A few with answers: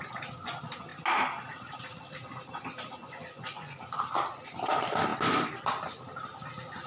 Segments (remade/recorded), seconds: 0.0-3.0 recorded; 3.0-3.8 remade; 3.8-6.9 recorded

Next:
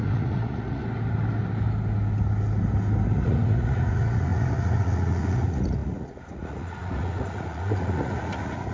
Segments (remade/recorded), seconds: 0.0-0.8 remade; 0.8-3.1 recorded; 3.1-8.7 remade

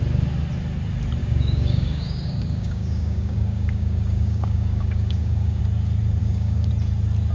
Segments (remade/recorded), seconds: 0.0-1.2 recorded; 1.2-5.6 remade; 5.6-6.2 recorded; 6.2-6.7 remade; 6.7-7.3 recorded

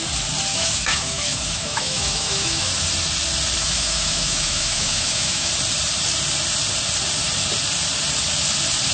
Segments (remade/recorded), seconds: 0.0-0.5 recorded; 0.5-2.7 remade; 2.7-3.6 recorded; 3.6-5.5 remade; 5.5-8.9 recorded

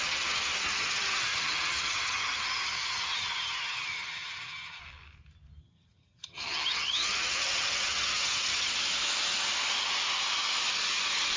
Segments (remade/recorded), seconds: 0.0-4.8 remade; 4.8-5.6 recorded; 5.6-8.7 remade; 8.7-11.4 recorded

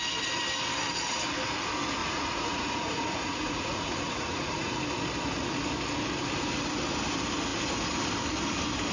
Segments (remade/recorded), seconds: 0.0-2.0 recorded; 2.0-4.7 remade; 4.7-8.9 recorded